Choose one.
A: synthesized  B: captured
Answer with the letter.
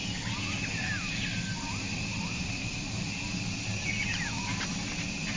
B